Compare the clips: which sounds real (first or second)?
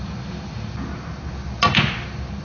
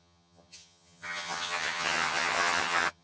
first